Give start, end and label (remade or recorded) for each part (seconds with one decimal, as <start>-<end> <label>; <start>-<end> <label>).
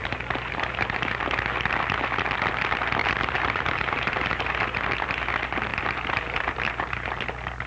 0.0-1.2 remade; 1.2-3.0 recorded; 3.0-4.8 remade; 4.8-5.7 recorded; 5.7-7.2 remade; 7.2-7.7 recorded